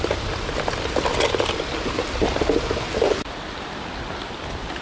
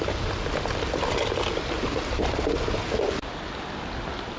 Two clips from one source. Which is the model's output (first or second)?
first